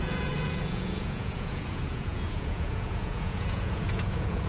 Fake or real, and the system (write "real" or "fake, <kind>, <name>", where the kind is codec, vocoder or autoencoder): fake, vocoder, Vocos